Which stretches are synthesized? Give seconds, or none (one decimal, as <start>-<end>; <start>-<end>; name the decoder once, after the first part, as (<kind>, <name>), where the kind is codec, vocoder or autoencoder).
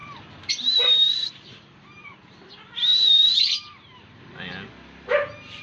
0.0-0.5 (vocoder, BigVGAN v2); 1.0-1.6; 2.9-4.5